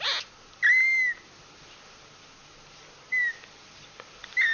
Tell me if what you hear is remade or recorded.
recorded